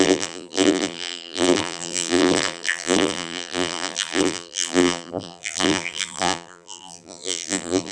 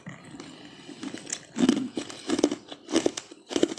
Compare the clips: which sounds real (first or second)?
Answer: second